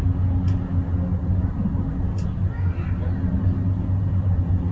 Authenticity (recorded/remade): recorded